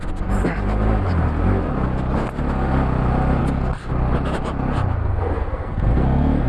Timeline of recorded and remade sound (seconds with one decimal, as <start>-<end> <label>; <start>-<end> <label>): 0.0-3.4 recorded; 3.4-3.9 remade; 3.9-5.0 recorded; 5.0-6.5 remade